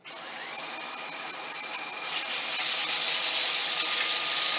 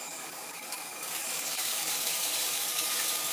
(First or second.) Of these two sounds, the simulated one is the second